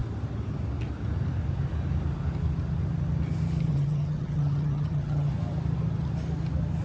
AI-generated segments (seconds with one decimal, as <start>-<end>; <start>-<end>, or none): 3.7-5.3